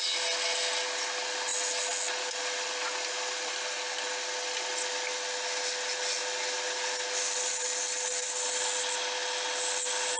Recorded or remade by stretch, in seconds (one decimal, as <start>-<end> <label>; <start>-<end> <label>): 0.0-10.2 recorded